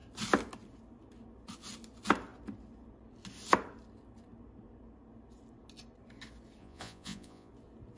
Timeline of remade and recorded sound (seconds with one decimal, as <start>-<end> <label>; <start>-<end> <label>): 0.0-6.6 recorded; 6.6-7.5 remade; 7.5-8.0 recorded